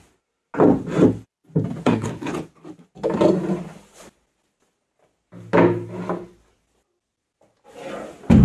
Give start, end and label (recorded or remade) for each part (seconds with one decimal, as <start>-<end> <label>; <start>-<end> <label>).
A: 0.0-1.8 recorded; 1.8-2.3 remade; 2.3-8.4 recorded